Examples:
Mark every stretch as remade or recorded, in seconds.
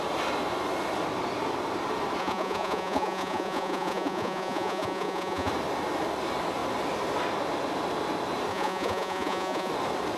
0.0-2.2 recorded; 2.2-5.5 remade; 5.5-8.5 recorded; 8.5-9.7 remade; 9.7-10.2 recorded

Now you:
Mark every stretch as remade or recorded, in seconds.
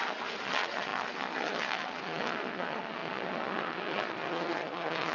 0.0-5.1 remade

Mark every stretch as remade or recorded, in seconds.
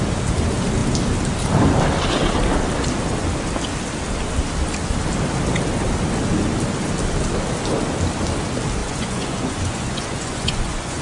0.0-8.8 recorded; 8.8-11.0 remade